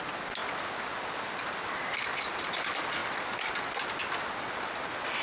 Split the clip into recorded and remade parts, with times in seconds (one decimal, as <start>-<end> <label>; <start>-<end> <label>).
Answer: 0.0-5.2 recorded